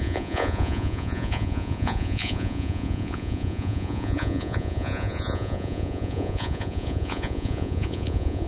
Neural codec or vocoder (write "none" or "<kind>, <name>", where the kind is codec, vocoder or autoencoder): vocoder, Vocos